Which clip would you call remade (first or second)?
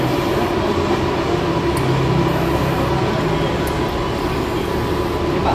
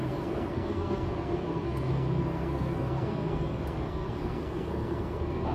second